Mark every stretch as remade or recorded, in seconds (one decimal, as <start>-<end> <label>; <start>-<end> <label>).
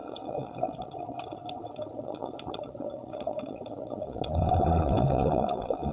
0.0-5.9 remade